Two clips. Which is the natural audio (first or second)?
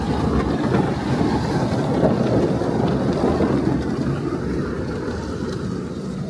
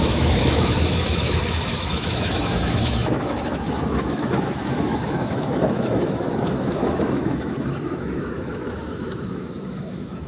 first